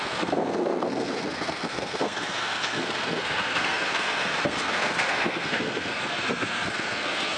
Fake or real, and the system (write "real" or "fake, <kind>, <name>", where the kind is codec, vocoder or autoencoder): fake, codec, SNAC